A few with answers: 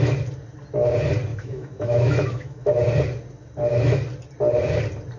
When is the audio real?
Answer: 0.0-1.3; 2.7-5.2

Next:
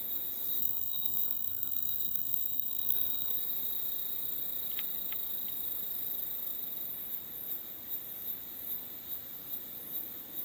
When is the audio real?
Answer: 0.0-0.6; 3.4-10.4

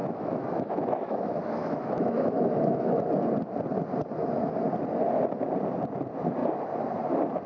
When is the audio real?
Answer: 3.1-7.5

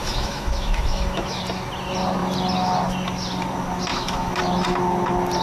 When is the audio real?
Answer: 1.4-3.9; 4.4-5.4

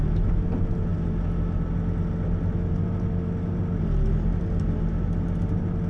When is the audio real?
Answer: 0.0-5.9

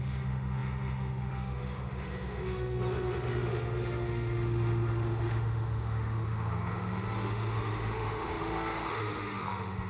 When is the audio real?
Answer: none

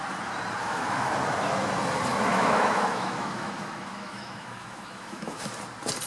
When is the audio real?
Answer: 0.0-0.6; 1.1-2.1; 5.5-6.1

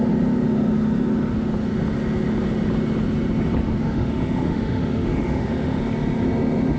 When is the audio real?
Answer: 0.0-3.8; 5.8-6.8